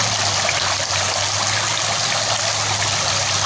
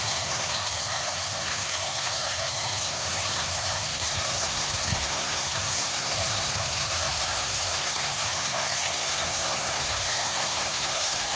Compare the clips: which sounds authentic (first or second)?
first